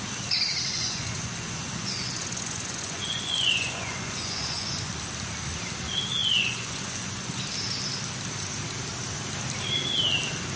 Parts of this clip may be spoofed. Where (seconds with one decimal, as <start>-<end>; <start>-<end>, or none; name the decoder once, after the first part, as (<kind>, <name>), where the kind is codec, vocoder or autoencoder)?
0.7-4.9 (vocoder, Vocos); 6.2-7.4